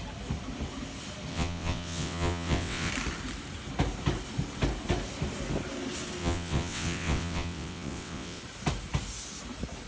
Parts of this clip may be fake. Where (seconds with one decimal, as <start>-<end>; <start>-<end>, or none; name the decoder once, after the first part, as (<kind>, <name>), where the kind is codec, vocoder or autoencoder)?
1.3-2.9 (vocoder, WaveNeXt); 6.2-8.4